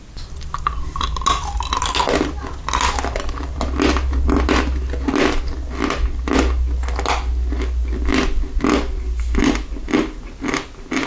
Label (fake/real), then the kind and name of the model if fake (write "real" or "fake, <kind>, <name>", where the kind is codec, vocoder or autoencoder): real